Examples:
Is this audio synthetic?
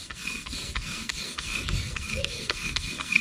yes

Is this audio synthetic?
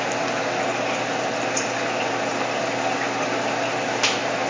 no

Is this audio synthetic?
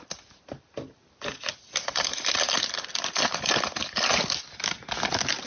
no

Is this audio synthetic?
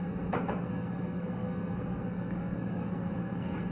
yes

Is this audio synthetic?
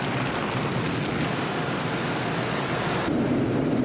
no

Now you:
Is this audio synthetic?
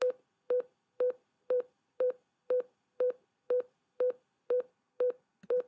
yes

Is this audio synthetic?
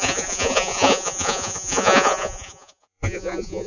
yes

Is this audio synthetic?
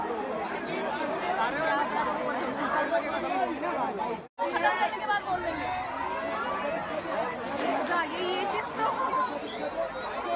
no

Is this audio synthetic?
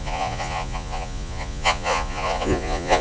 yes